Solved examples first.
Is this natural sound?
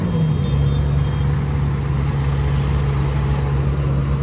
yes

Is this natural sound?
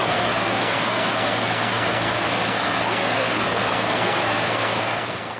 no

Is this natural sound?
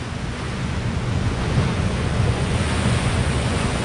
no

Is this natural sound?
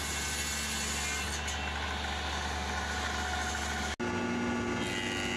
yes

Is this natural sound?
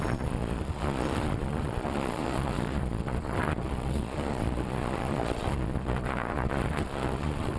no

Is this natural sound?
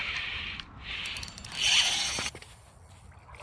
yes